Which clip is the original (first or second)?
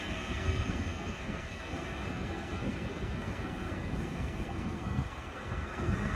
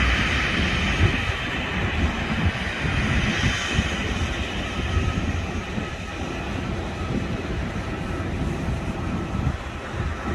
second